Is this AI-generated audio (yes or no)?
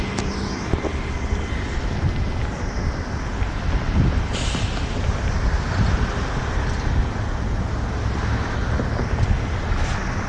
no